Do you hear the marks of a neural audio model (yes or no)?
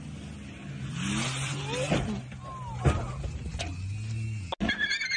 no